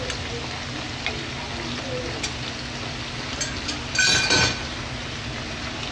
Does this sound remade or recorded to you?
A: recorded